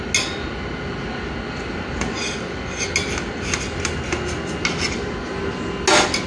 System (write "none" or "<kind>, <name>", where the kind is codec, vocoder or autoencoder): none